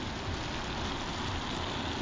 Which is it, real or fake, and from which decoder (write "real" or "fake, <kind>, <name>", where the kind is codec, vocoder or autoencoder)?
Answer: real